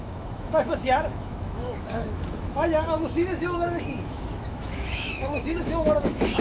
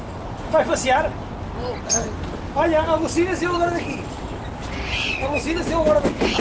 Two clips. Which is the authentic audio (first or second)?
second